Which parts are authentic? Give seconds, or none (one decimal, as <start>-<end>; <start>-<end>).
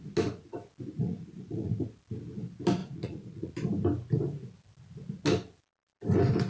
0.0-0.9; 1.9-2.8; 3.5-6.5